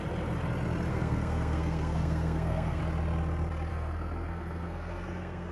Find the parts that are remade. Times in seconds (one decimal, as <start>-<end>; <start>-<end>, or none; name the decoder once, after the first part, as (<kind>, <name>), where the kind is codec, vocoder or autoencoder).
0.9-2.8 (codec, SNAC); 3.7-5.5